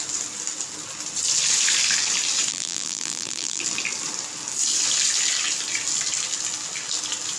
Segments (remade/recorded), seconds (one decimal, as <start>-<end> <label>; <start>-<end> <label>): 0.0-2.5 recorded; 2.5-3.6 remade; 3.6-7.4 recorded